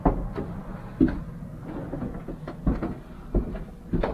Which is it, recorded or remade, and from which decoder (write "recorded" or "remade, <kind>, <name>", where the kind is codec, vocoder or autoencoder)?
recorded